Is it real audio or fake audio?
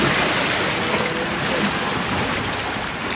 real